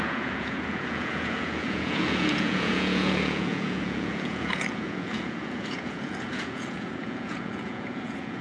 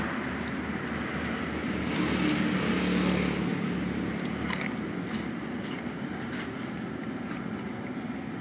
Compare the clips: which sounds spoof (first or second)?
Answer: first